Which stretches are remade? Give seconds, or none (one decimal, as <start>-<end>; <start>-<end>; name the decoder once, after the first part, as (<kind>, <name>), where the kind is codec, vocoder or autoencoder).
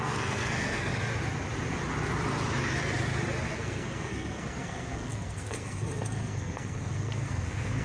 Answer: 0.0-0.9 (codec, SNAC); 3.5-7.8